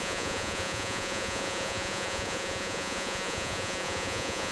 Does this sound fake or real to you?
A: fake